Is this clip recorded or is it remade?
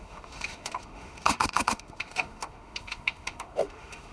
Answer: remade